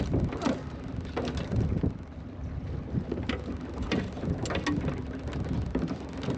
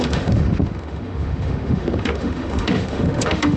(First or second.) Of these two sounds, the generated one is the second